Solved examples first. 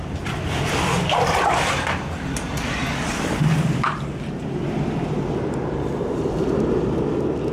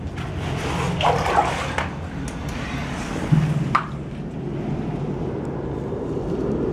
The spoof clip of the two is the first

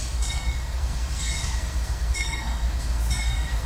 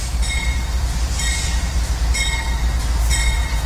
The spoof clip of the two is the first